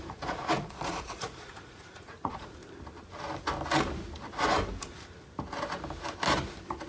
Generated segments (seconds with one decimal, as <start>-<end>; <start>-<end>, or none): 0.0-2.6